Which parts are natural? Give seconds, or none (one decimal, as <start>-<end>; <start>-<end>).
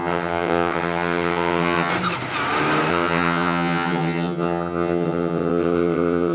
1.9-2.9